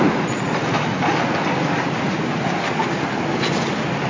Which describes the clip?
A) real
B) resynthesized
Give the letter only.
A